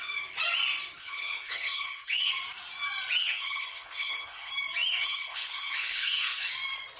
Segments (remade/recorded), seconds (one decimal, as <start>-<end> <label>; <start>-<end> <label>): 0.0-1.0 recorded; 1.0-2.3 remade; 2.3-3.2 recorded; 3.2-4.5 remade; 4.5-5.0 recorded; 5.0-6.5 remade; 6.5-7.0 recorded

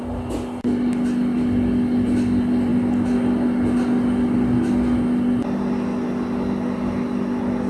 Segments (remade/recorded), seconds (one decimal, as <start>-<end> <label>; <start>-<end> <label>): 0.0-7.7 recorded

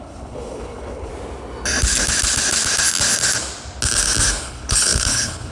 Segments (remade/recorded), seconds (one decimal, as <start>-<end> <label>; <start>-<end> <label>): 0.0-1.1 remade; 1.1-4.4 recorded; 4.4-5.5 remade

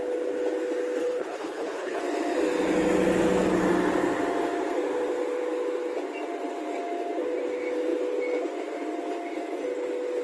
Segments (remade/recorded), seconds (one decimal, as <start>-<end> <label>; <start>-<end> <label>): 0.0-1.0 recorded; 1.0-2.0 remade; 2.0-10.2 recorded